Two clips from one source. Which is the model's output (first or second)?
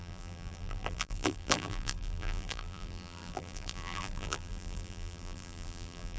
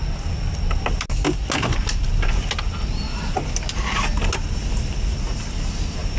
first